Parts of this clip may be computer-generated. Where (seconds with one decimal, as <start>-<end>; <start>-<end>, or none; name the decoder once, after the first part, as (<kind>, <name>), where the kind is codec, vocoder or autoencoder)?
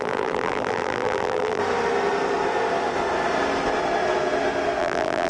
0.0-1.6 (vocoder, BigVGAN v2); 4.8-5.3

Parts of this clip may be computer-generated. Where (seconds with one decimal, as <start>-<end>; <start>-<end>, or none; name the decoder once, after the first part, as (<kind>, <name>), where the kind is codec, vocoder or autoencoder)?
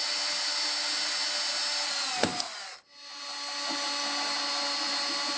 none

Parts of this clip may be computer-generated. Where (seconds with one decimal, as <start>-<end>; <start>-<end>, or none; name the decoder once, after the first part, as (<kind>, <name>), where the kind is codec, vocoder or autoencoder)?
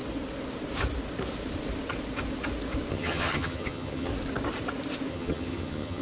2.9-4.1 (vocoder, HiFi-GAN); 5.1-6.0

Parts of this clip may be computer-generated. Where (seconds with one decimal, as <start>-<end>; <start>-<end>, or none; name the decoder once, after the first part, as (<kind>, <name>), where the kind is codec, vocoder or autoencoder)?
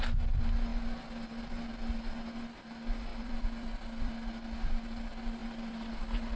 3.1-4.1 (vocoder, BigVGAN v2); 5.4-6.0